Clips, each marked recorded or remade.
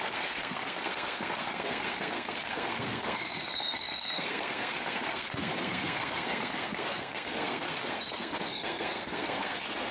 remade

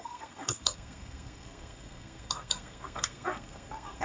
remade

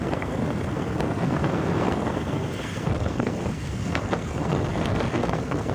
remade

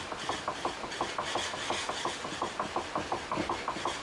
recorded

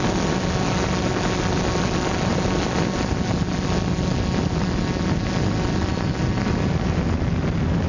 recorded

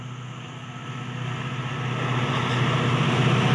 recorded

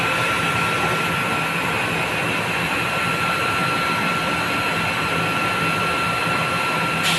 recorded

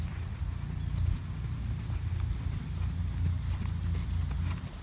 recorded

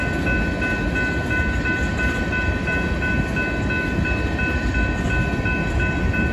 recorded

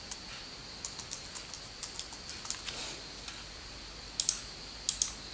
recorded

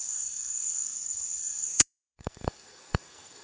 remade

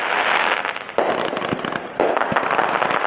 recorded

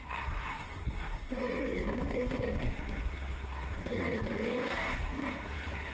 remade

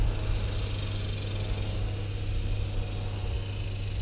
recorded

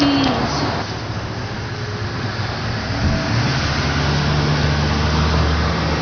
recorded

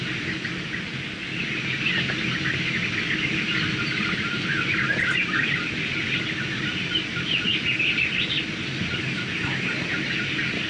recorded